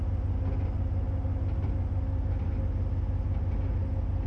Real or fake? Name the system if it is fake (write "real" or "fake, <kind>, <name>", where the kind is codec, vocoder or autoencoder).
real